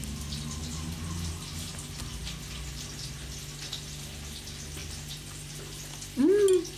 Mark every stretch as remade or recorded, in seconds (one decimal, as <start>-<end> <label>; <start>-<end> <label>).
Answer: 0.0-4.8 recorded; 4.8-5.8 remade; 5.8-6.8 recorded